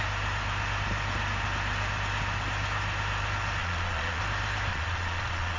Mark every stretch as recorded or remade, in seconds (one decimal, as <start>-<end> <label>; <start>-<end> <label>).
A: 0.0-3.6 recorded; 3.6-4.2 remade; 4.2-4.7 recorded; 4.7-5.6 remade